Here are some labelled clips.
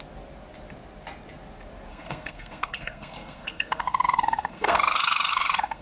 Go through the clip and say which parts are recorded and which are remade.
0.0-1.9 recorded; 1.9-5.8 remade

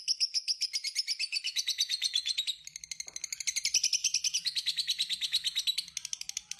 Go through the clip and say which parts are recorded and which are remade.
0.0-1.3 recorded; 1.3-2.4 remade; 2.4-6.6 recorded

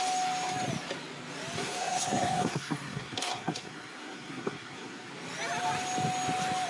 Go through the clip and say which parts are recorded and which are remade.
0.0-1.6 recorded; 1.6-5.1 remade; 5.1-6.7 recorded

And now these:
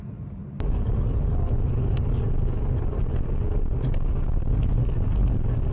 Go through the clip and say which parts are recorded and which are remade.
0.0-5.7 recorded